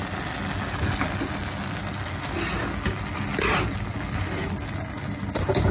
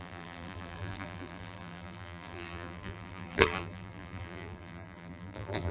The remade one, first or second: second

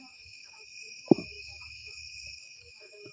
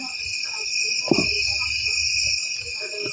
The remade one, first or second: first